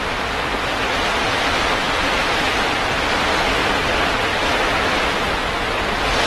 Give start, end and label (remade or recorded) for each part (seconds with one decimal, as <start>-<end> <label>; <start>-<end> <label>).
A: 0.0-1.8 recorded; 1.8-2.5 remade; 2.5-3.6 recorded; 3.6-4.2 remade; 4.2-6.3 recorded